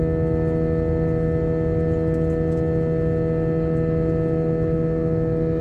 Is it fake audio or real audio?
real